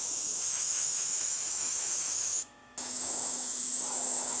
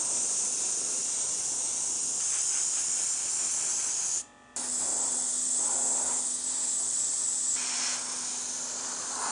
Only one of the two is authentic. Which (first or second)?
second